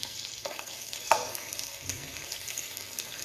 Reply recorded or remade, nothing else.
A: remade